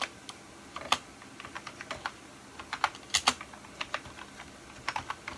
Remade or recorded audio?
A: recorded